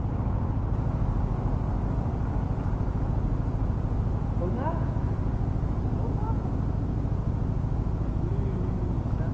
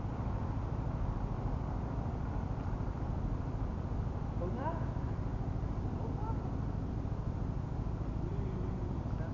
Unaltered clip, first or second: first